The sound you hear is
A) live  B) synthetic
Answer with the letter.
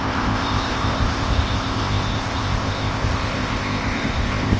B